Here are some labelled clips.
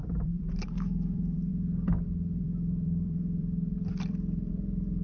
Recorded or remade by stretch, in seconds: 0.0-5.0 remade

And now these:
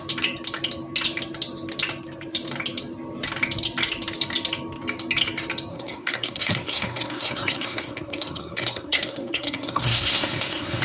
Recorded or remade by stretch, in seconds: 0.0-5.7 recorded; 5.7-10.8 remade